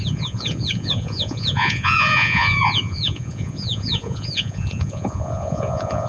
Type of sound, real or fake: fake